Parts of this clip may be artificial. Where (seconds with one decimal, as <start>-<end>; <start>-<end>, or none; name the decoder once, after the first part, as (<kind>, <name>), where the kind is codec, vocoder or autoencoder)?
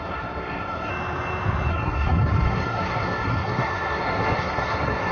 0.0-0.9 (codec, SNAC); 1.7-5.1